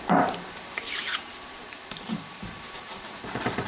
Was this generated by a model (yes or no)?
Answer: yes